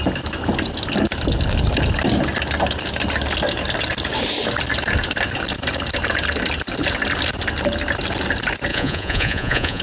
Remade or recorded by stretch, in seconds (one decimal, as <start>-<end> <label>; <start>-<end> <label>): 0.0-8.7 recorded; 8.7-9.8 remade